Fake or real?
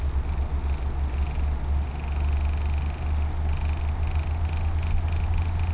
real